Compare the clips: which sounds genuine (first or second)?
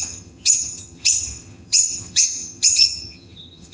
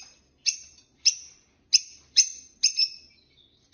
second